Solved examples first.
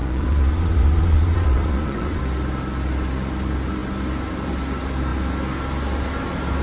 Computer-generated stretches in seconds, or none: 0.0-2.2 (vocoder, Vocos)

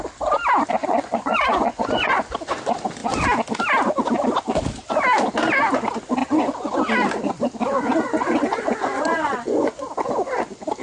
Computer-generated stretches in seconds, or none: 0.8-2.2 (vocoder, Vocos); 6.2-6.7; 7.7-9.8

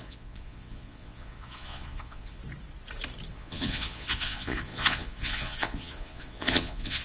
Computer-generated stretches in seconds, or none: 0.0-2.4 (vocoder, Vocos); 3.3-7.0

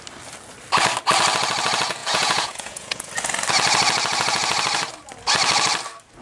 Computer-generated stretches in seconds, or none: 2.0-3.1 (vocoder, Vocos)